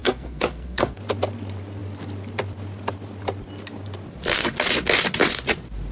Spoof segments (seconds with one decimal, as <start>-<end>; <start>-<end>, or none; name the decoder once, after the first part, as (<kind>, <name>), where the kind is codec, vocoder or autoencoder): 0.0-1.0 (codec, SNAC)